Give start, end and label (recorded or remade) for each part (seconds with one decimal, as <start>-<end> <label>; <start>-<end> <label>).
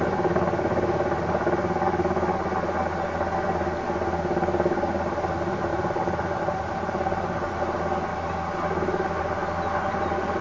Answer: 0.0-5.7 recorded; 5.7-7.5 remade; 7.5-10.4 recorded